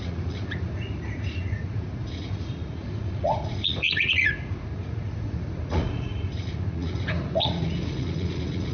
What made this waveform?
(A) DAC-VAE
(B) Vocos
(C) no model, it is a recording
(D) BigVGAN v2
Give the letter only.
B